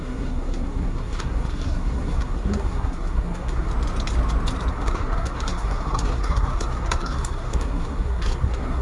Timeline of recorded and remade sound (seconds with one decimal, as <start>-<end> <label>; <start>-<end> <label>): 0.0-3.7 remade; 3.7-4.7 recorded; 4.7-8.8 remade